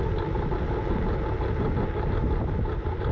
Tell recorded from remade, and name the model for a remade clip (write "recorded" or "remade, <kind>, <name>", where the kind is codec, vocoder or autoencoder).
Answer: recorded